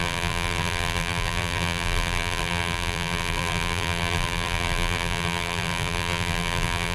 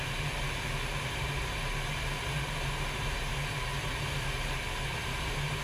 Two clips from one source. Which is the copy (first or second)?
first